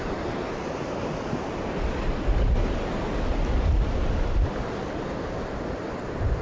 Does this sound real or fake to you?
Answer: fake